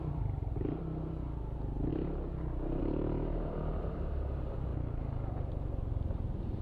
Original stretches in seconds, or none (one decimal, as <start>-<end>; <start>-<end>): 1.9-2.8; 4.7-5.3